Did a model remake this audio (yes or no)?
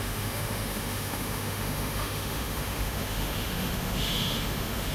yes